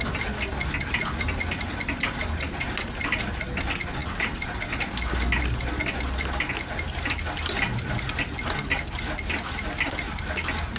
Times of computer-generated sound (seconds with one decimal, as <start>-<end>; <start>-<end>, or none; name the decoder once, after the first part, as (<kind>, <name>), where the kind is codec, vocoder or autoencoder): none